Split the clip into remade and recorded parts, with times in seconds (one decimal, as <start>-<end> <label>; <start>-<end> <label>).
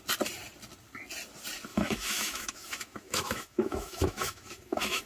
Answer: 0.0-1.7 recorded; 1.7-5.1 remade